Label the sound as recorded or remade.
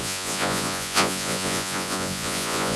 remade